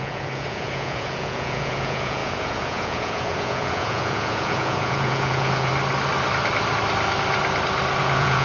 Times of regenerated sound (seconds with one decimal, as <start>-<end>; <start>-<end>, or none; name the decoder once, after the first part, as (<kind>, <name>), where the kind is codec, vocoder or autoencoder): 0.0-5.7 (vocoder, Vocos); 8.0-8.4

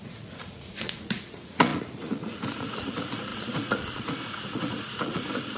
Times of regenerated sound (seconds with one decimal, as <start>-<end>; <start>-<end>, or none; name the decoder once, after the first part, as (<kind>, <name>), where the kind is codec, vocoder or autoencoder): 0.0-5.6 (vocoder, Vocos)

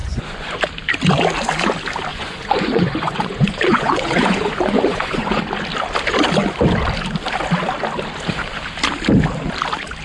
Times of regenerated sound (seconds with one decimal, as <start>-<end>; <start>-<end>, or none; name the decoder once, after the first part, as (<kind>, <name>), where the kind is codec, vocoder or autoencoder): 0.0-0.6 (vocoder, Vocos); 2.1-5.4